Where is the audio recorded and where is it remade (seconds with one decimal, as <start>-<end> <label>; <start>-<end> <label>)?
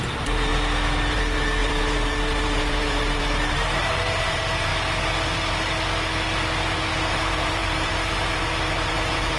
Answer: 0.0-0.5 remade; 0.5-1.1 recorded; 1.1-4.7 remade; 4.7-7.1 recorded; 7.1-9.4 remade